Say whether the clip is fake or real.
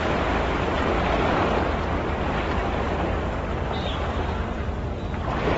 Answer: real